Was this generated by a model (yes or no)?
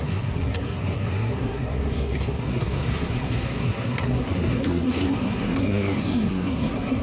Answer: yes